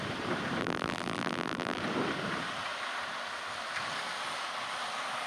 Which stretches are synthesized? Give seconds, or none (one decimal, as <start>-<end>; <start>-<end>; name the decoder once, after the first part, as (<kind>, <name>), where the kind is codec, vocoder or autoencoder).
0.6-1.8 (vocoder, BigVGAN v2)